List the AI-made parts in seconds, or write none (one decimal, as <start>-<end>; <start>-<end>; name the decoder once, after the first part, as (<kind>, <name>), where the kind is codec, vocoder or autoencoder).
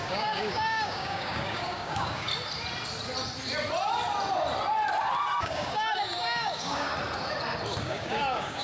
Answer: 0.0-2.3 (codec, DAC); 5.4-6.9; 7.8-8.6